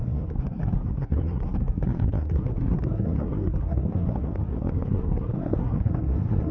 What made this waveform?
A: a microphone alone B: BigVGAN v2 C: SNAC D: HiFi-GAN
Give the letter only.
C